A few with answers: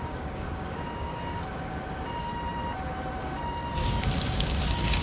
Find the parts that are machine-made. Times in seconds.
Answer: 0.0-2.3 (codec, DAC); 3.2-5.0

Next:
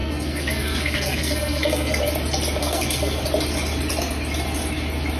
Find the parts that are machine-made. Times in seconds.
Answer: 0.0-2.0 (codec, SNAC); 2.6-3.2